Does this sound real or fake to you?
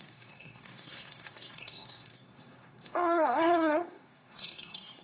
fake